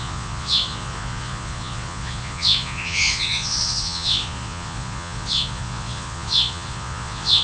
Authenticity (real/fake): fake